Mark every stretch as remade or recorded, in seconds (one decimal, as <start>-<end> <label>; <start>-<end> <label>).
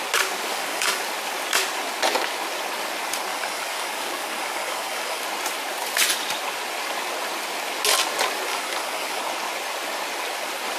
0.0-0.5 recorded; 0.5-1.0 remade; 1.0-3.3 recorded; 3.3-5.2 remade; 5.2-8.5 recorded; 8.5-9.2 remade; 9.2-10.8 recorded